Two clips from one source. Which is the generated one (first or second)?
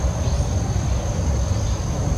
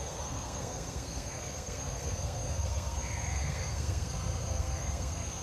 second